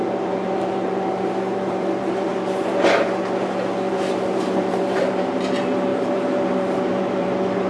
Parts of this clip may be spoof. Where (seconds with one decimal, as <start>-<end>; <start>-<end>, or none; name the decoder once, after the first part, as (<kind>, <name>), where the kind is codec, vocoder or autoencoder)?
0.0-2.3 (vocoder, BigVGAN v2); 3.9-7.7